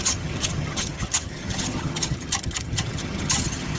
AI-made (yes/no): yes